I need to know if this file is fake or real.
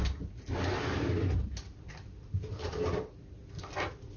real